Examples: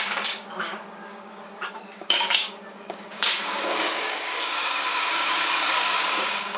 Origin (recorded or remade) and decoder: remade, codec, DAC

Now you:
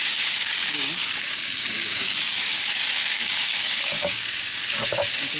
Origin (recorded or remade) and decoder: remade, codec, DAC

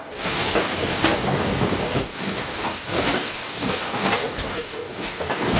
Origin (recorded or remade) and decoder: remade, codec, DAC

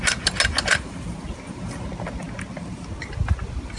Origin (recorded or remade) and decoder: recorded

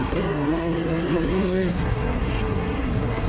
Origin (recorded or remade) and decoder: remade, codec, SNAC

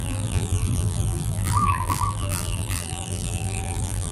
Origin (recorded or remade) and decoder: remade, vocoder, BigVGAN v2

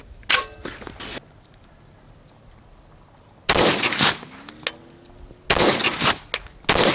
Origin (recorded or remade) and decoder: recorded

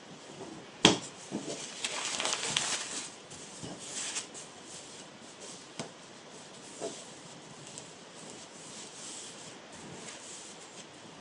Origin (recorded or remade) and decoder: recorded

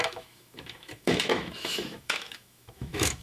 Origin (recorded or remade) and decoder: remade, autoencoder, DAC-VAE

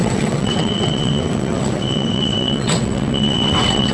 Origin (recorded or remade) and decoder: remade, vocoder, WaveNeXt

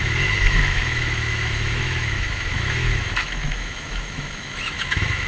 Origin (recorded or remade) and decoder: remade, autoencoder, DAC-VAE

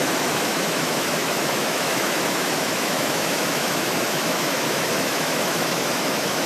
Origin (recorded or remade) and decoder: remade, autoencoder, DAC-VAE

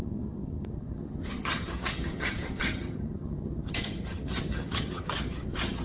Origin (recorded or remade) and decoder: remade, vocoder, HiFi-GAN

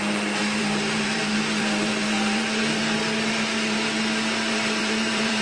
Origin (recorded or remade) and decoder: remade, vocoder, BigVGAN v2